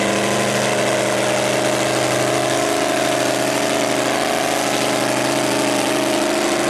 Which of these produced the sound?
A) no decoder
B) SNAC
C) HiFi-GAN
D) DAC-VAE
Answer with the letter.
A